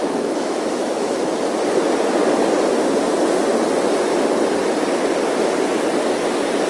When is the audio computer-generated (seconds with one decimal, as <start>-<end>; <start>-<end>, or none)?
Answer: 0.0-1.3